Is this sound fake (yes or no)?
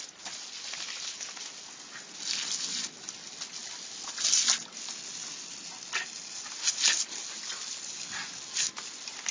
no